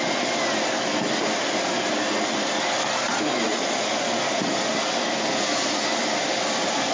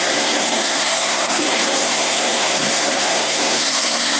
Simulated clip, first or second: second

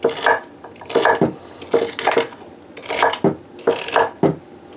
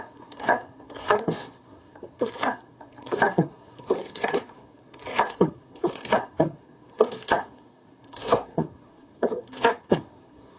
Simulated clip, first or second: second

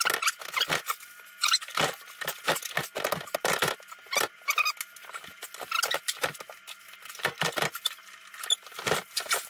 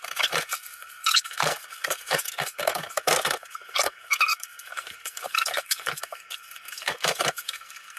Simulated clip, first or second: second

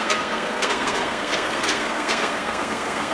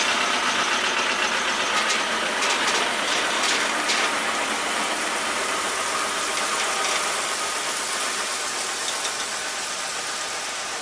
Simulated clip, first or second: first